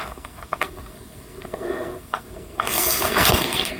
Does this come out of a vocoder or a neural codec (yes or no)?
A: yes